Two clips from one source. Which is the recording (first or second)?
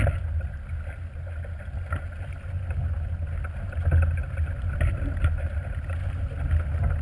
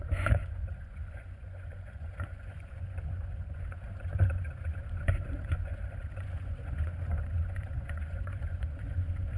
first